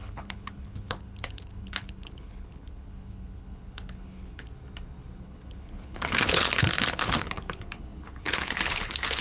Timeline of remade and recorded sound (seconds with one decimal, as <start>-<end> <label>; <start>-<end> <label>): 0.0-4.5 remade; 4.5-5.2 recorded; 5.2-9.2 remade